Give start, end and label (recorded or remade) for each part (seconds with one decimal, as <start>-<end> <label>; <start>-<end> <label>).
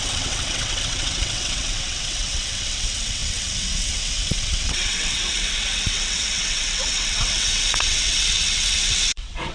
0.0-9.5 remade